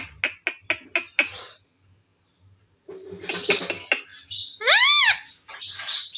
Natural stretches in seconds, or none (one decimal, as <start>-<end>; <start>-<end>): 0.0-6.2